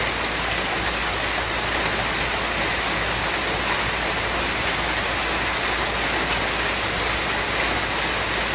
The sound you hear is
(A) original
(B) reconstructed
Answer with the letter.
A